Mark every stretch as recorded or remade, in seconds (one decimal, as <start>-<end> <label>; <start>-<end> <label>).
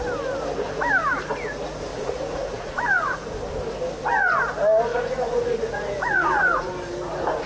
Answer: 0.0-1.9 recorded; 1.9-3.3 remade; 3.3-4.9 recorded; 4.9-6.7 remade; 6.7-7.5 recorded